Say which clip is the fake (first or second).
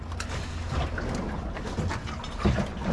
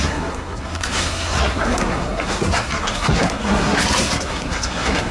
second